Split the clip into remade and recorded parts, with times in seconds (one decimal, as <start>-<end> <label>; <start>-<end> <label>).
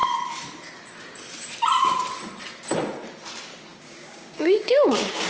0.0-3.7 recorded; 3.7-5.3 remade